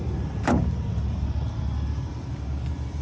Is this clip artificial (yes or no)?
no